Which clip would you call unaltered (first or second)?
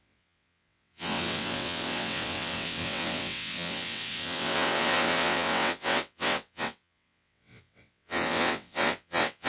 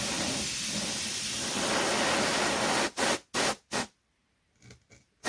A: second